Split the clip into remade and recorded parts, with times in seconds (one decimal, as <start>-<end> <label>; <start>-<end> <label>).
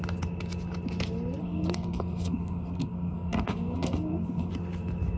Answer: 0.0-1.4 recorded; 1.4-4.5 remade; 4.5-5.2 recorded